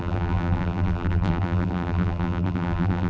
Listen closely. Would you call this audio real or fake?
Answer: fake